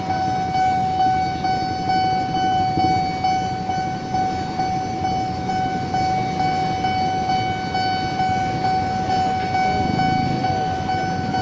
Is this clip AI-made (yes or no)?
no